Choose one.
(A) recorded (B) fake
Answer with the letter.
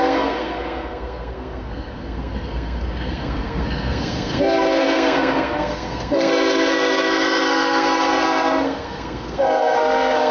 B